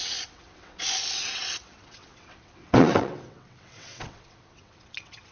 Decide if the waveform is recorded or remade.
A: remade